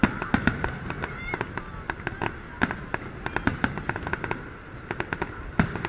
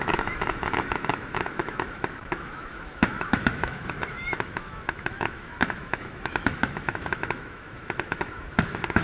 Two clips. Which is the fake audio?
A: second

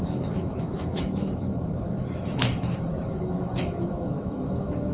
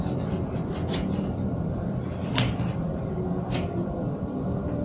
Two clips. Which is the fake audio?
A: first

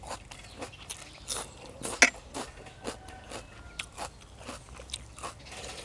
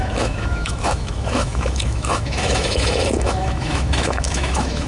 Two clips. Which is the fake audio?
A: second